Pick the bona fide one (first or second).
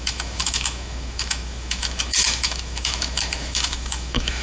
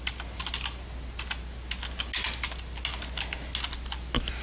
second